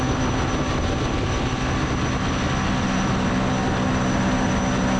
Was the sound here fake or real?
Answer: real